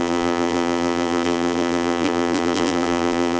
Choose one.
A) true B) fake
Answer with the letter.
B